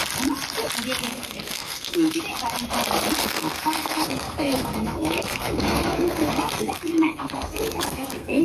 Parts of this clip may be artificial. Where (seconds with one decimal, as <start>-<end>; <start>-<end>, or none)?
1.1-2.2; 3.2-8.4